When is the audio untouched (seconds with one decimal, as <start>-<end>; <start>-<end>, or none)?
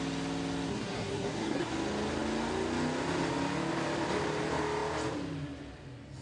0.0-0.7; 1.7-6.2